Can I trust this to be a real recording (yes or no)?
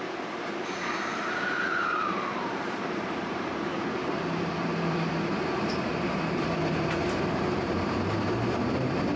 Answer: no